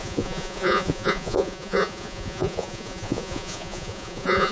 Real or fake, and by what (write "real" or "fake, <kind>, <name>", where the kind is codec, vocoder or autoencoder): fake, vocoder, Vocos